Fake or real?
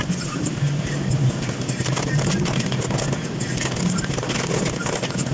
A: real